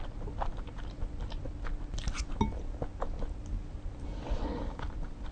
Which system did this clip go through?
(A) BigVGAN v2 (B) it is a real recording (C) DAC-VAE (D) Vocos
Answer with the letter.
B